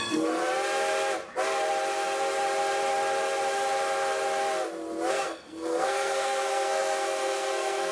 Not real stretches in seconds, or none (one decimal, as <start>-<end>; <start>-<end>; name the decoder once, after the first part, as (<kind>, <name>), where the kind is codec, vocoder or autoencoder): 0.0-0.4 (codec, SNAC); 5.1-7.9